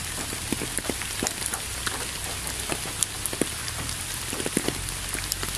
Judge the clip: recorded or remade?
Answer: recorded